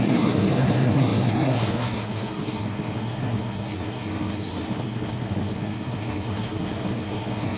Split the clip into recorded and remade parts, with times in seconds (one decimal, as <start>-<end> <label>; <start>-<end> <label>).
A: 0.0-7.6 remade